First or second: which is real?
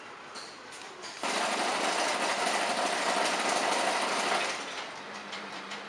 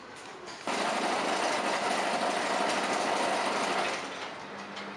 second